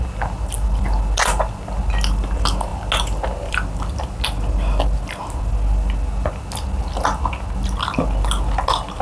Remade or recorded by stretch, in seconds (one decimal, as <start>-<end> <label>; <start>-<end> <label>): 0.0-9.0 recorded